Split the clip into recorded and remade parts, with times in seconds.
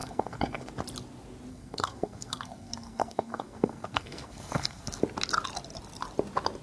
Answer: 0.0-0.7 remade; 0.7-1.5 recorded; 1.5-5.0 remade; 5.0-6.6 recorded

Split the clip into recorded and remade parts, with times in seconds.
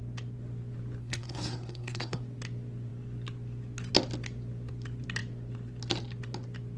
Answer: 0.0-1.0 recorded; 1.0-2.2 remade; 2.2-6.8 recorded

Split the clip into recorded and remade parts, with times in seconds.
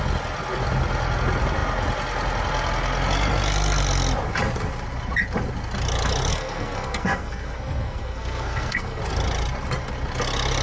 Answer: 0.0-6.3 recorded; 6.3-9.0 remade; 9.0-10.6 recorded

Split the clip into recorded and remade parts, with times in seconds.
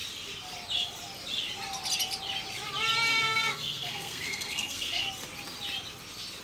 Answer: 0.0-3.1 recorded; 3.1-5.1 remade; 5.1-6.4 recorded